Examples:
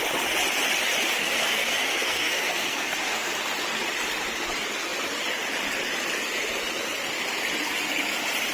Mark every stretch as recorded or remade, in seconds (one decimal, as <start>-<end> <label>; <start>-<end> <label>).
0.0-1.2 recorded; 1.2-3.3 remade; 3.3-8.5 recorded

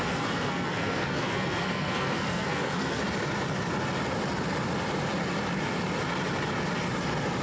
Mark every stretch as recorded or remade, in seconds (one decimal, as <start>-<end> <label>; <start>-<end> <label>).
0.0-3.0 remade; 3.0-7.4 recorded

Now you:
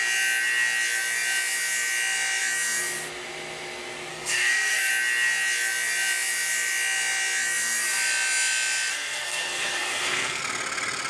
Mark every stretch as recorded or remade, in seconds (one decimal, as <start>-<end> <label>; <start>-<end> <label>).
0.0-4.1 recorded; 4.1-4.9 remade; 4.9-8.9 recorded; 8.9-10.4 remade; 10.4-11.1 recorded

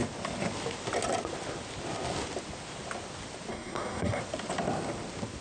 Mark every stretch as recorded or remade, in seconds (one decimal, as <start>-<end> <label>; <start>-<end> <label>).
0.0-3.5 recorded; 3.5-4.2 remade; 4.2-5.4 recorded

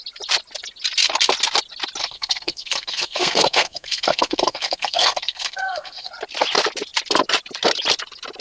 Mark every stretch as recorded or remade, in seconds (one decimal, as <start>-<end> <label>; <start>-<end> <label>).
0.0-2.0 recorded; 2.0-6.1 remade; 6.1-8.4 recorded